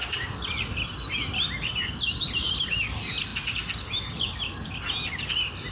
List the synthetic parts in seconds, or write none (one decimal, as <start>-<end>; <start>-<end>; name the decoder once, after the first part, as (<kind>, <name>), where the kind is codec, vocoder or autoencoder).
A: none